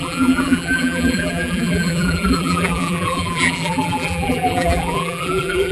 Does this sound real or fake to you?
fake